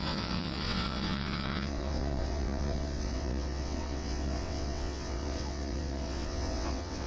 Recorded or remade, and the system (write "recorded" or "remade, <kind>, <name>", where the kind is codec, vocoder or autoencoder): remade, vocoder, WaveNeXt